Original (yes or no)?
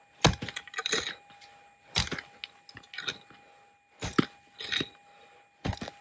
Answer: yes